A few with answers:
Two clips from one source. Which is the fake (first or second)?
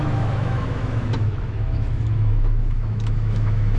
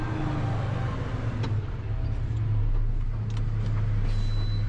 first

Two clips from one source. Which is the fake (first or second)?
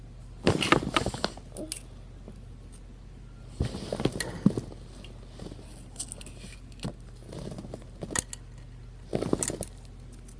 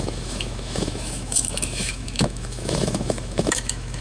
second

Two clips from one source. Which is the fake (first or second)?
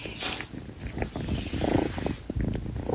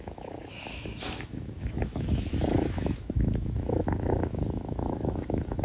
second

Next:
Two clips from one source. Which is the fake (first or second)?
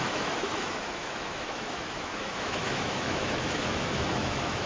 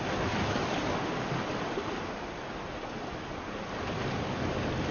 first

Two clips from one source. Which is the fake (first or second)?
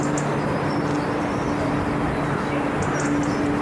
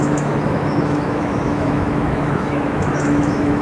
second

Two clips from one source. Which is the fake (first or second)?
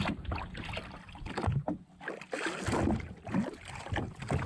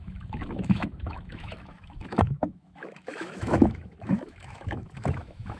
second